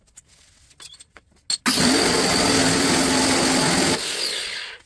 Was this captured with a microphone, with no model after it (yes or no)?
yes